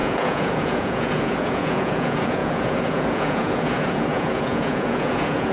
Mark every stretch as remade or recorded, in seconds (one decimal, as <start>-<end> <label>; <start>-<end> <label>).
0.0-5.5 remade